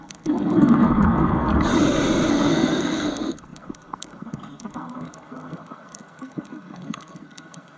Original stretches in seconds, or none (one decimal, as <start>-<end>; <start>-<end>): 1.5-2.3